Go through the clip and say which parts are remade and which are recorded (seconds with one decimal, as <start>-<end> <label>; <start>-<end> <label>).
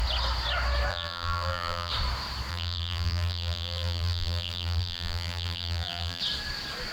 0.0-0.9 recorded; 0.9-1.9 remade; 1.9-2.5 recorded; 2.5-6.2 remade; 6.2-6.9 recorded